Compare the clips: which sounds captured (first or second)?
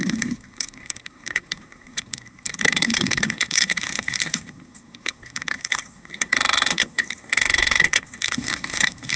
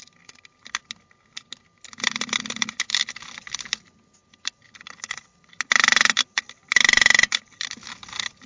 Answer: second